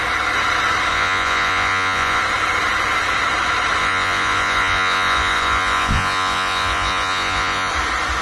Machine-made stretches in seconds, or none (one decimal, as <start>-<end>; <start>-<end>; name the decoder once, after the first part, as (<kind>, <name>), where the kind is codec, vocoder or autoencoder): 0.9-2.2 (vocoder, Vocos); 3.8-7.7